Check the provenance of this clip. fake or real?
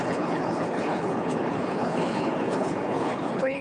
fake